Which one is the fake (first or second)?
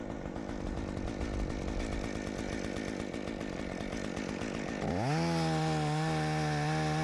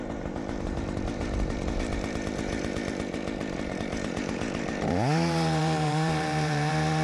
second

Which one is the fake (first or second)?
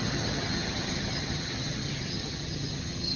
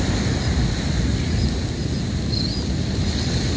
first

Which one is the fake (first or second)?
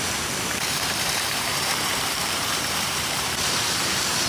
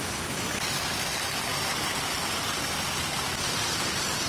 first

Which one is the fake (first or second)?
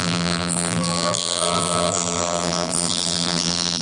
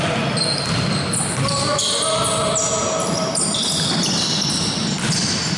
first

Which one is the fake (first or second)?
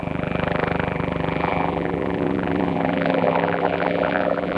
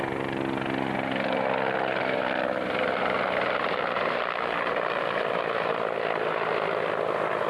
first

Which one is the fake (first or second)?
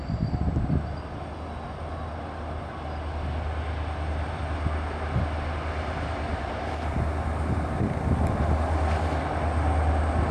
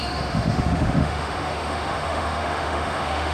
second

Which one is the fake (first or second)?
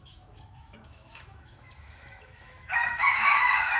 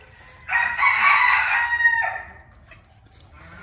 first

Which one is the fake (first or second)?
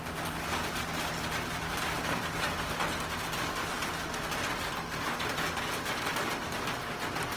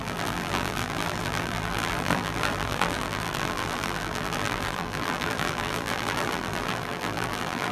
second